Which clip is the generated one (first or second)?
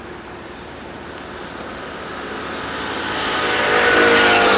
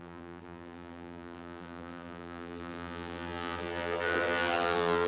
second